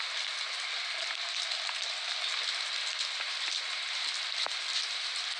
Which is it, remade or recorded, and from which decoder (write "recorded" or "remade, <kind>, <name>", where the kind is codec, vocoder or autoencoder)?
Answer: recorded